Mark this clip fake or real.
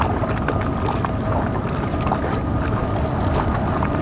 real